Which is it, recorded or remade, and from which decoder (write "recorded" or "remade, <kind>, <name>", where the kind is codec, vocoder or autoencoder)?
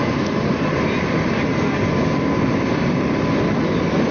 recorded